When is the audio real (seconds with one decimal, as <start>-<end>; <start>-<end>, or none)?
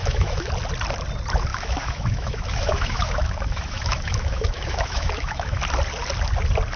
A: 0.5-1.5; 5.6-6.8